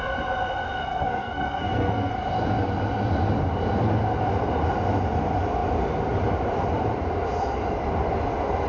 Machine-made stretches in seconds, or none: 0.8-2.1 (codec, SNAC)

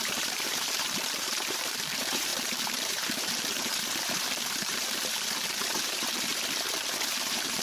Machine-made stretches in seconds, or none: 0.0-6.3 (vocoder, BigVGAN v2); 7.1-7.6

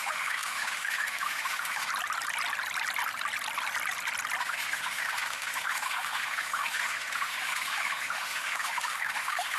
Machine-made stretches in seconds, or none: 0.0-1.9 (autoencoder, DAC-VAE); 4.4-9.6

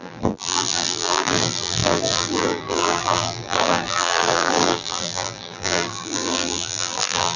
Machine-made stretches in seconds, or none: 0.0-7.4 (vocoder, BigVGAN v2)